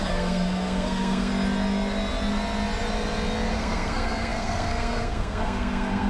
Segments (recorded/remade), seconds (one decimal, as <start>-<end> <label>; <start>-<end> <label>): 0.0-1.3 remade; 1.3-3.5 recorded; 3.5-6.1 remade